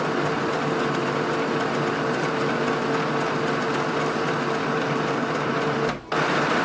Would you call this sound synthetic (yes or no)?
no